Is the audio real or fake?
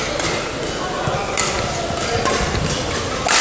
real